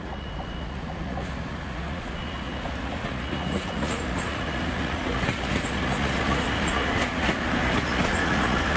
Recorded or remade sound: remade